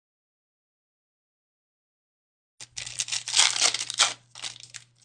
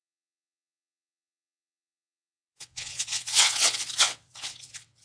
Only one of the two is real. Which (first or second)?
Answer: first